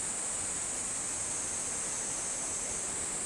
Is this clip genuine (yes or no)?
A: yes